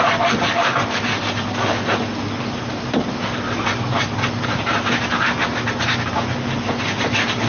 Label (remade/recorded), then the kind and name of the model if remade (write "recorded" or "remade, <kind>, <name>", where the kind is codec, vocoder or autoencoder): recorded